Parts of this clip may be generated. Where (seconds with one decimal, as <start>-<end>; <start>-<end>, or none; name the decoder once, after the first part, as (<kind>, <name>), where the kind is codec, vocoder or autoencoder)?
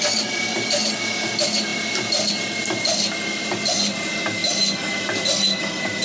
none